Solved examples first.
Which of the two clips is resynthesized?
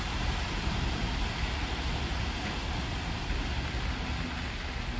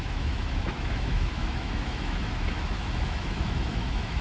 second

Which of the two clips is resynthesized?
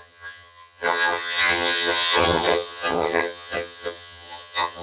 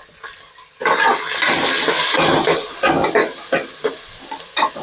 first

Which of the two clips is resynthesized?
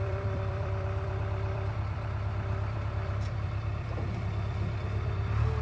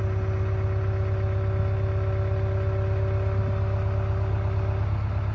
first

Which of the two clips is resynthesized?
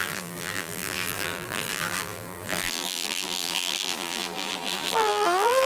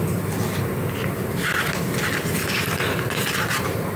first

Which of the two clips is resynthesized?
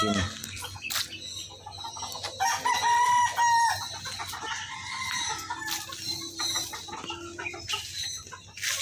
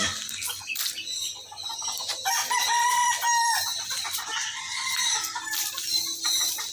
second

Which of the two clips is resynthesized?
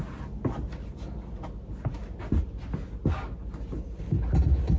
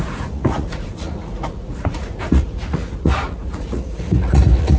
second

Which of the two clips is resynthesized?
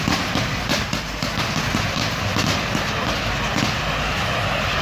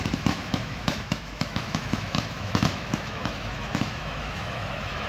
second